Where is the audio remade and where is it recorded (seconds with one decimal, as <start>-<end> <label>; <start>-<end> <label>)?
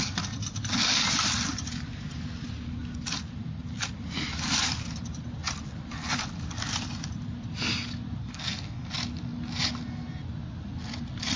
0.0-8.2 recorded; 8.2-8.9 remade; 8.9-11.4 recorded